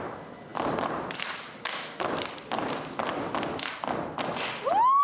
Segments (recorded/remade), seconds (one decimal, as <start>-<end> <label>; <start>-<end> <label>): 0.0-5.0 recorded